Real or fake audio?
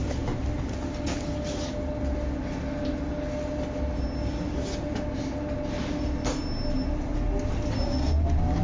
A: real